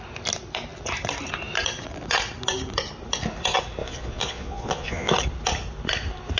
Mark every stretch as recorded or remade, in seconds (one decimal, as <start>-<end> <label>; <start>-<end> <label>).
0.0-3.8 recorded; 3.8-5.1 remade; 5.1-6.4 recorded